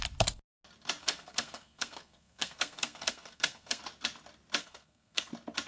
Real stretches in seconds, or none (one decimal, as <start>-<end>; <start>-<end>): 0.0-1.0; 3.8-4.6; 5.3-5.7